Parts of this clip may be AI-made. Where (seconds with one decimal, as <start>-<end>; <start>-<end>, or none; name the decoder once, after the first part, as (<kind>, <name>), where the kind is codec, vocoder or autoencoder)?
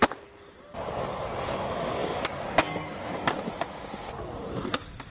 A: none